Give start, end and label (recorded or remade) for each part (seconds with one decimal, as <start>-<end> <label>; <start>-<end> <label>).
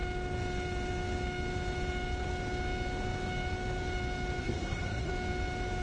0.0-4.4 recorded; 4.4-5.1 remade; 5.1-5.8 recorded